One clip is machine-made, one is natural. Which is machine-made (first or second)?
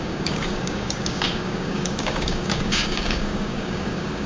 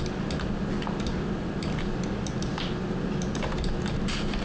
first